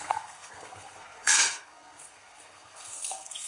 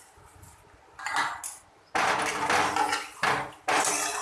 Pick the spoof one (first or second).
first